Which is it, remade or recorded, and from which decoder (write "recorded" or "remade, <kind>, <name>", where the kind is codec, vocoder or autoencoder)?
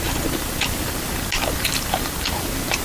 recorded